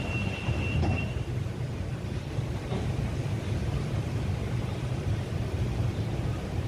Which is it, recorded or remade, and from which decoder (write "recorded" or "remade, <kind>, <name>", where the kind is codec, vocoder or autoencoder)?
remade, vocoder, BigVGAN v2